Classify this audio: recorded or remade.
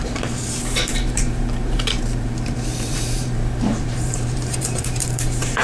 remade